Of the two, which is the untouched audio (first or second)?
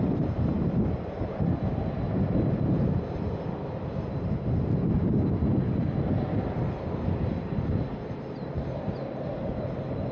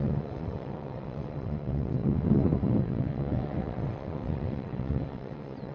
first